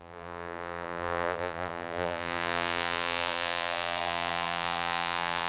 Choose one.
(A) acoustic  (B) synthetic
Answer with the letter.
B